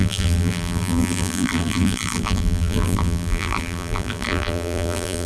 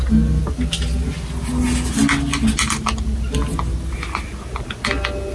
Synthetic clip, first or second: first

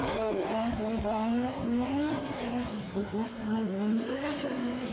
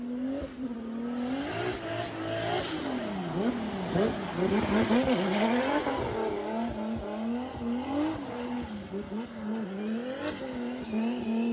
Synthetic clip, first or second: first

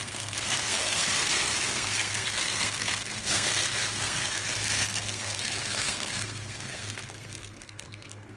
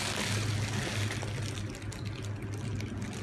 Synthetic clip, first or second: first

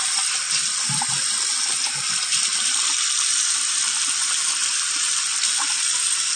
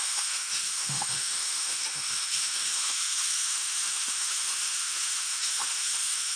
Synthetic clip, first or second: second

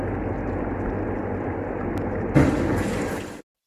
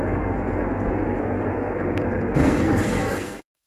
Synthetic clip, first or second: second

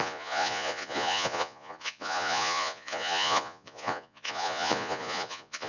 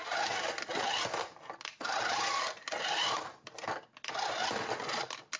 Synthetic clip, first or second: first